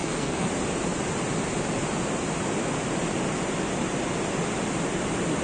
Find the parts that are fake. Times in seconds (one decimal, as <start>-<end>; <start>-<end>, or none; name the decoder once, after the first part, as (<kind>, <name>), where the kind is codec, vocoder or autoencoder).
0.0-0.5 (codec, SNAC)